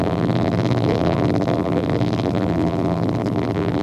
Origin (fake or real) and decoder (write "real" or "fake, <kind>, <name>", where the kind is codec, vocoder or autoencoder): fake, vocoder, BigVGAN v2